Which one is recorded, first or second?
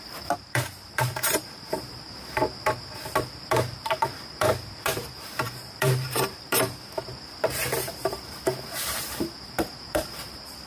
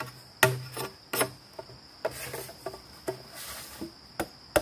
second